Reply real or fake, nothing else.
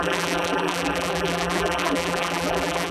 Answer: fake